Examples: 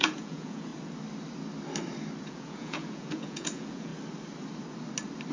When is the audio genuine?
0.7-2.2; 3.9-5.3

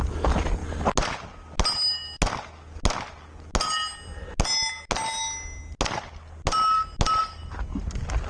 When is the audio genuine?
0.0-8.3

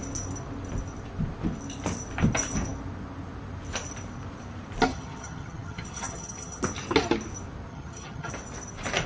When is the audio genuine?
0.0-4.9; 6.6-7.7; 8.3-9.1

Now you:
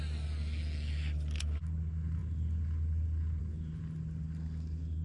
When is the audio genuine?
0.0-5.0

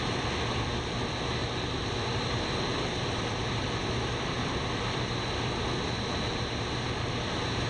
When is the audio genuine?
0.0-1.4; 5.8-7.7

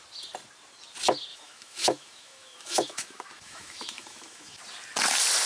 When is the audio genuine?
0.0-1.3; 4.6-5.5